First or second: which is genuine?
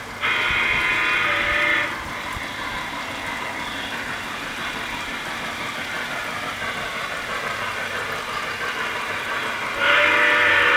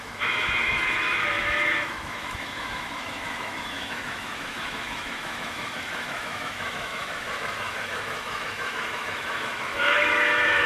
first